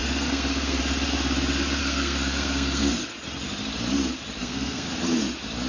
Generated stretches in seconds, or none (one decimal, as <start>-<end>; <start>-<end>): 0.0-0.8; 1.8-2.9; 4.4-4.9